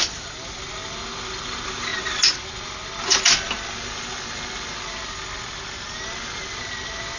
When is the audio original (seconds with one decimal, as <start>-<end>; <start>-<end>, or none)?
0.0-7.2